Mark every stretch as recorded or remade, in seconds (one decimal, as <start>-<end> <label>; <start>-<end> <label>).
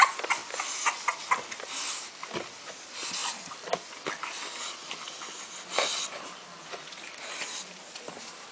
0.0-8.5 recorded